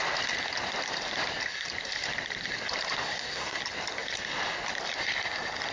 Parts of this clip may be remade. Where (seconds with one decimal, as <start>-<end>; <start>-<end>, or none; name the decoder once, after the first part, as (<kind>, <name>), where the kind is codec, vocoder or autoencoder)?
3.0-3.6 (codec, SNAC)